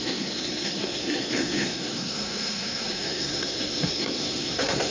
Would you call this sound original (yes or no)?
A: no